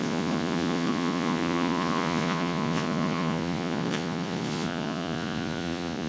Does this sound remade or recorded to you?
remade